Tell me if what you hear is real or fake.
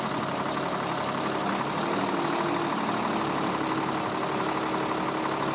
real